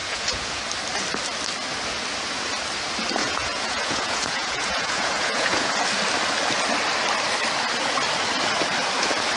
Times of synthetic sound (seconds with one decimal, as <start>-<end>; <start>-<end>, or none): 0.0-0.6; 3.2-5.7